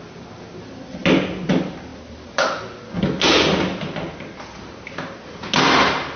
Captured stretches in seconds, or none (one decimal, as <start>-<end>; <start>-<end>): 0.0-6.2